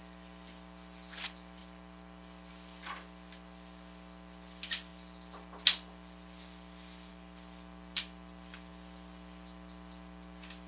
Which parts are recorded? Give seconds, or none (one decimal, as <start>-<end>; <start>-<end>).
0.0-10.7